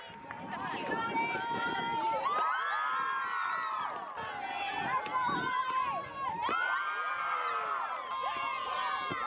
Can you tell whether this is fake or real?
real